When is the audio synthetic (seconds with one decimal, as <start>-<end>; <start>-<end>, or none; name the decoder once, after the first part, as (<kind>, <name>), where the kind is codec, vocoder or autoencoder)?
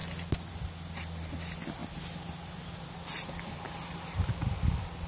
0.5-1.8 (vocoder, BigVGAN v2); 4.3-5.1